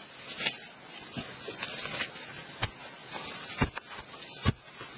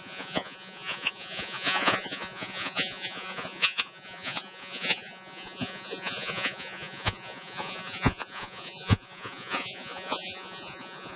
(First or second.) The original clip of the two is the first